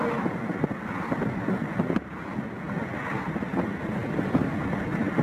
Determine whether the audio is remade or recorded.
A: recorded